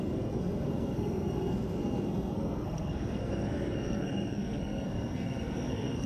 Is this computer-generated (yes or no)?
yes